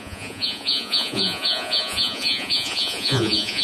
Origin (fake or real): fake